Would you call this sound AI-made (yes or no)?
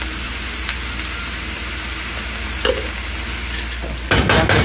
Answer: no